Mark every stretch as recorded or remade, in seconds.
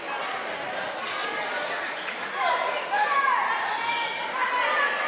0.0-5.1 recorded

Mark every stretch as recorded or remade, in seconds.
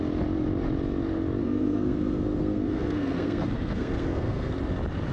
0.0-1.4 recorded; 1.4-4.5 remade; 4.5-5.1 recorded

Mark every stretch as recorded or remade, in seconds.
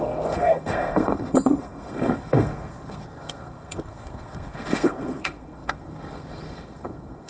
0.0-7.3 remade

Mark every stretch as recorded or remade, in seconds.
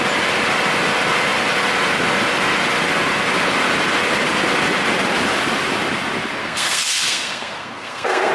0.0-6.4 recorded; 6.4-8.3 remade